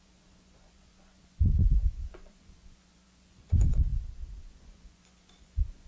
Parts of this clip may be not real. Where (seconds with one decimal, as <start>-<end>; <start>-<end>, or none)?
0.0-3.9; 4.4-5.9